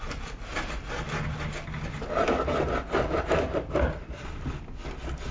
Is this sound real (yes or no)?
yes